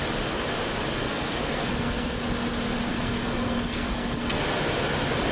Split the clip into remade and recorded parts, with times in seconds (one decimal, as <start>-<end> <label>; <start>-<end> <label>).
0.0-1.0 recorded; 1.0-2.2 remade; 2.2-2.9 recorded; 2.9-4.4 remade; 4.4-5.3 recorded